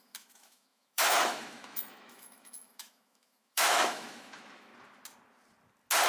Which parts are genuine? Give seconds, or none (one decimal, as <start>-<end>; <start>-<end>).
4.7-6.1